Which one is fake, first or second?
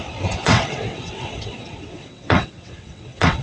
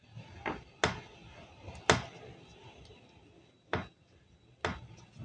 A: first